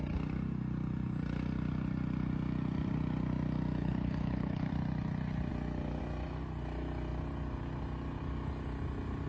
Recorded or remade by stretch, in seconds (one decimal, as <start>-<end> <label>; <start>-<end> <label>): 0.0-3.8 recorded; 3.8-4.7 remade; 4.7-9.3 recorded